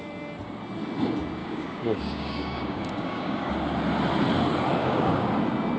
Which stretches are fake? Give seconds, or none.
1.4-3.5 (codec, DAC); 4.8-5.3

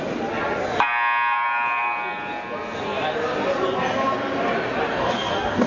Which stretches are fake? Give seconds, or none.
4.9-5.7 (codec, DAC)